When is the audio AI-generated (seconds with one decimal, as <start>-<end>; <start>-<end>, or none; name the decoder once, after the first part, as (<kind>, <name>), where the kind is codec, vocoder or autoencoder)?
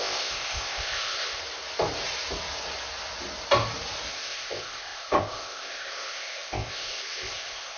0.0-1.4 (codec, ZipCodec); 4.1-7.8